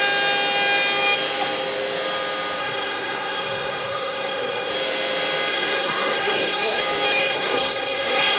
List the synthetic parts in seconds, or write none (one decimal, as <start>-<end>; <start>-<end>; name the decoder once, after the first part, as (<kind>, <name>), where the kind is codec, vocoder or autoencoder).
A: 2.6-4.7 (codec, SNAC); 5.5-6.8; 7.2-8.4